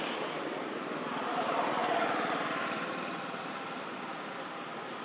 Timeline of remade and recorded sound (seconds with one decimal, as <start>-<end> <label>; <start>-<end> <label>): 0.0-5.0 recorded